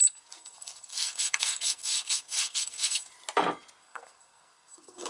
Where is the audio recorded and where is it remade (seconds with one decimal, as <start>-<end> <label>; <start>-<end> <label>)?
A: 0.0-3.1 remade; 3.1-3.8 recorded; 3.8-5.1 remade